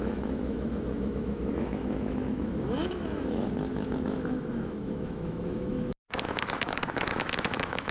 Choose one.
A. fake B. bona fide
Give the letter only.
A